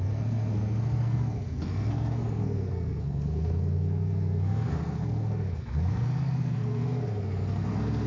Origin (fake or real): fake